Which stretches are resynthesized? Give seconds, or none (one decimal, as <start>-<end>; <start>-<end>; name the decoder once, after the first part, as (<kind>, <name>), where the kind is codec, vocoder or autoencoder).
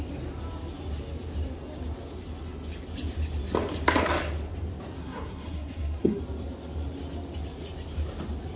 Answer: 5.0-6.2 (codec, SNAC)